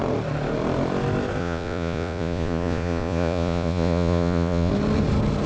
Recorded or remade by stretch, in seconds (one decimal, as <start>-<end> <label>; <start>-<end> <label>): 0.0-1.4 recorded; 1.4-4.7 remade; 4.7-5.5 recorded